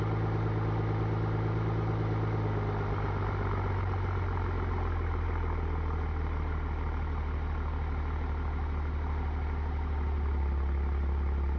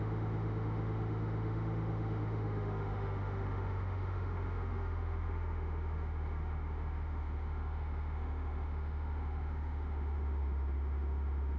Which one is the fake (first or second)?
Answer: second